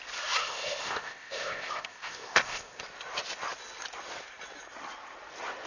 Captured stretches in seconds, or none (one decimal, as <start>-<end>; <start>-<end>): 0.0-0.4; 2.8-5.7